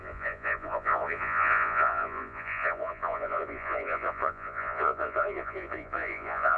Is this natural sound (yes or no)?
no